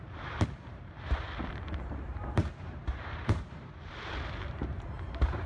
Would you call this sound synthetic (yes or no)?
yes